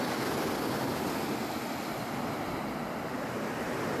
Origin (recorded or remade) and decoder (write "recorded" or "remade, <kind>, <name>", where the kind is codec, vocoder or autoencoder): recorded